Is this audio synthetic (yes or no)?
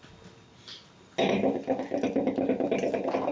no